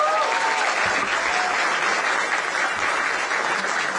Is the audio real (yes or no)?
yes